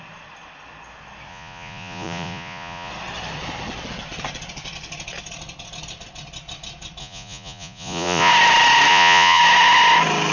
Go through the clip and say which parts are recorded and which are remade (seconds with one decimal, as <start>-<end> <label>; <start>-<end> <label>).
0.0-1.3 recorded; 1.3-2.9 remade; 2.9-7.0 recorded; 7.0-8.3 remade; 8.3-8.9 recorded; 8.9-9.4 remade; 9.4-10.3 recorded